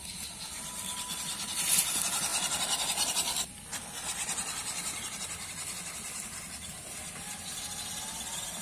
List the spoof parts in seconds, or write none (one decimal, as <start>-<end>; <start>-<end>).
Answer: none